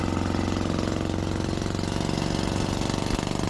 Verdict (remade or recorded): recorded